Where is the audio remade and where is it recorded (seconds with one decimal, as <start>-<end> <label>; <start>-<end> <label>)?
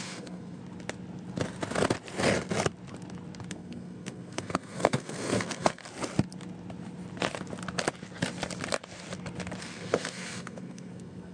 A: 0.0-0.6 remade; 0.6-3.5 recorded; 3.5-5.8 remade; 5.8-9.6 recorded; 9.6-11.3 remade